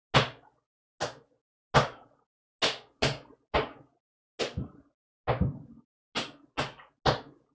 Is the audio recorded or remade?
recorded